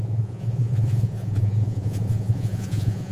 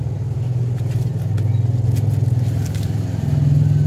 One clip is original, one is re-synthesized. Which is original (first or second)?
second